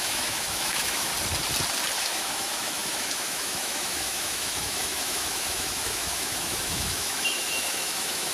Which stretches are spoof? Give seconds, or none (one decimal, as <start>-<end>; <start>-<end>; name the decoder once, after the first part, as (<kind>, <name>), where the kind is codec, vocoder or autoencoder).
0.0-1.1 (autoencoder, DAC-VAE); 2.0-8.3